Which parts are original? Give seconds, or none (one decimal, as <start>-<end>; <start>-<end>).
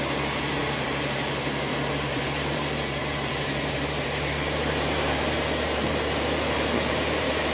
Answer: none